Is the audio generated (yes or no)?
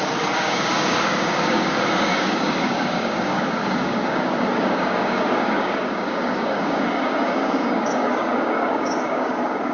yes